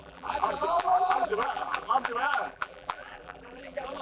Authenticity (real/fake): fake